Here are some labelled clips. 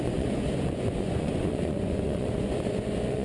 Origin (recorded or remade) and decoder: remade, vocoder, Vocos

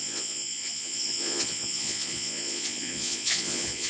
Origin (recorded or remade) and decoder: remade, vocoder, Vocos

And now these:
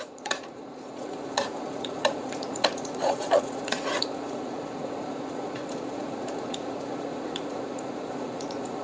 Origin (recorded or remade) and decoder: remade, vocoder, Vocos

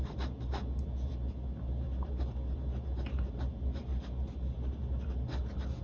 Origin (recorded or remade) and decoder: recorded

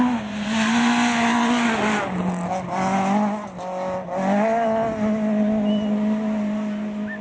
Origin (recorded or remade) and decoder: recorded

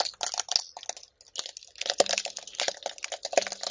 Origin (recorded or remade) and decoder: recorded